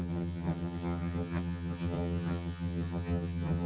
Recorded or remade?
remade